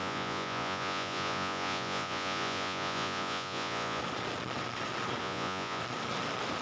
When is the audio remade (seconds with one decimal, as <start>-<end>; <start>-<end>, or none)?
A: 0.0-4.0; 5.2-5.8